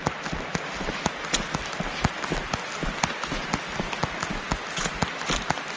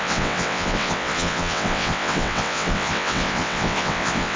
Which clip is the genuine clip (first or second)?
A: first